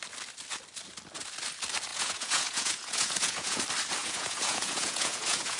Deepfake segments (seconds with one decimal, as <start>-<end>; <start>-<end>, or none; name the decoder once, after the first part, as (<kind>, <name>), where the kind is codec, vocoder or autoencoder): 1.9-3.6 (vocoder, Vocos); 4.0-5.6